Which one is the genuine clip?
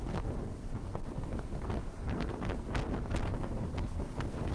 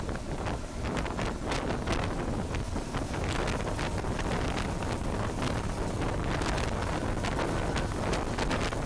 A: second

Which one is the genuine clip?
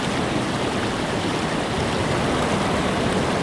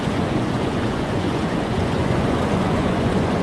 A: first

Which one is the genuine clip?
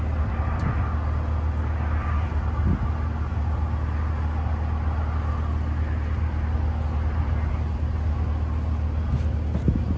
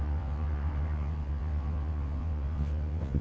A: first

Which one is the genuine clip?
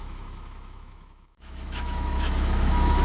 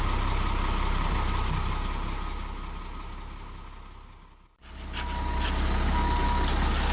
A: second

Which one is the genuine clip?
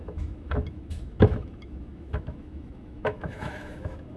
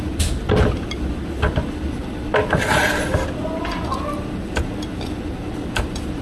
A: second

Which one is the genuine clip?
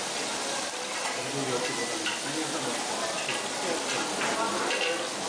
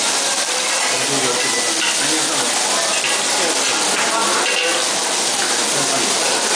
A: second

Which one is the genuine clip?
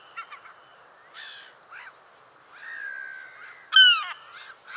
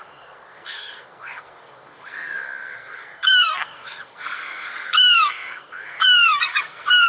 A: first